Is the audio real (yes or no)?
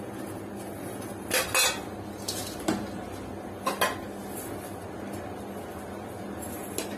yes